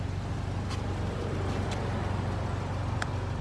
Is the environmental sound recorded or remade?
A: recorded